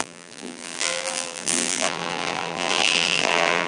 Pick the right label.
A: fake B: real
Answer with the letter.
A